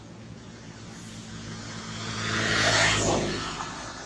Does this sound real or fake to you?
fake